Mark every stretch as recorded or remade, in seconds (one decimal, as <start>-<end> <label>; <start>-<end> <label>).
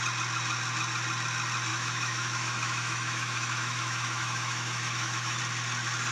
0.0-1.7 recorded; 1.7-5.4 remade; 5.4-6.1 recorded